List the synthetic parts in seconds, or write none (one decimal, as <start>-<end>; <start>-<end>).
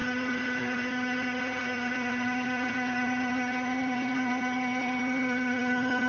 0.0-6.1